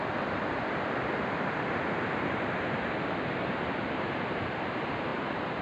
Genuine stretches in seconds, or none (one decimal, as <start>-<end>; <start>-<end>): 0.0-3.4

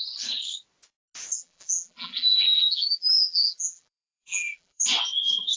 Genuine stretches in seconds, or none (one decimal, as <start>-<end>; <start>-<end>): 0.0-1.4; 4.8-5.6